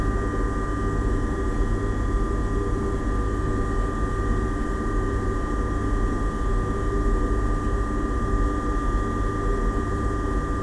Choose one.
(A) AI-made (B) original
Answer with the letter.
B